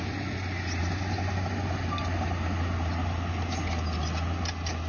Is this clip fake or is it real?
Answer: real